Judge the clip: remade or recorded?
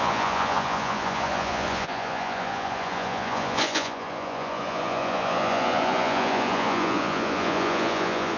remade